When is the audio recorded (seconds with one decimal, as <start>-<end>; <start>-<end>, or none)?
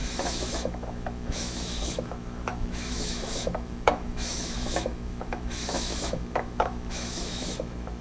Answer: none